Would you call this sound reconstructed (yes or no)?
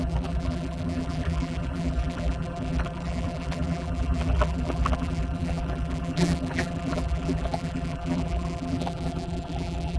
yes